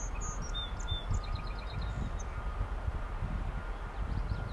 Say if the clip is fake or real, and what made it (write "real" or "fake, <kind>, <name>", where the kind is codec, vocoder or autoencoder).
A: real